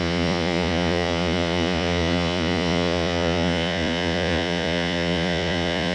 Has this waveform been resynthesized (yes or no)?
yes